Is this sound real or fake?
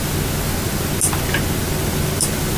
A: real